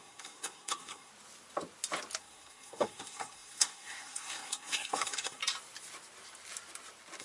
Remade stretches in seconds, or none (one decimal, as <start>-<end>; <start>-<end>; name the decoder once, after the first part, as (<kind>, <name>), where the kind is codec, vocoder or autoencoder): 0.0-1.1 (codec, SNAC); 2.2-5.4